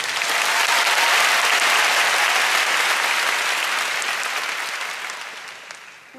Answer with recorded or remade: recorded